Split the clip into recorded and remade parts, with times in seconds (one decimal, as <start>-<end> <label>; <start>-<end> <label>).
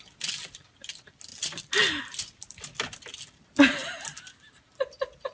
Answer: 0.0-5.3 recorded